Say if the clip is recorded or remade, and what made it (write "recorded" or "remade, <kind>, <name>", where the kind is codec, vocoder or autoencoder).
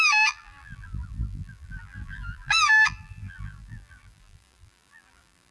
remade, vocoder, BigVGAN v2